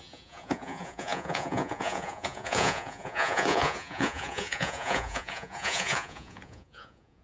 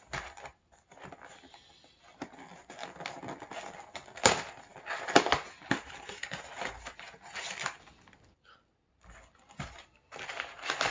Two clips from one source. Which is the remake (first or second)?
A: first